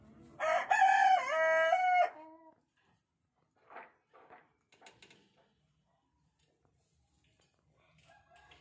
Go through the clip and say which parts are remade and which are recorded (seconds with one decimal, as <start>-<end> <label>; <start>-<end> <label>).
0.0-8.6 recorded